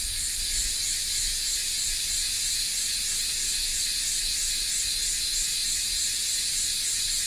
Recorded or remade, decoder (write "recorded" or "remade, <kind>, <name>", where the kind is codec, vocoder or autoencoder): recorded